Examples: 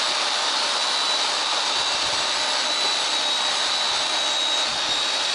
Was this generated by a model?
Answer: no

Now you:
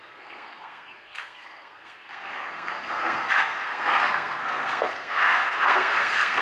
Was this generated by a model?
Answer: yes